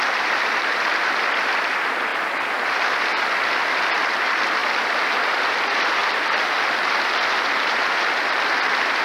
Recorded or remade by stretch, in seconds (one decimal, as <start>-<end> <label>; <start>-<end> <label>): 0.0-2.1 remade; 2.1-3.9 recorded; 3.9-4.6 remade; 4.6-5.2 recorded; 5.2-6.0 remade; 6.0-7.4 recorded; 7.4-9.0 remade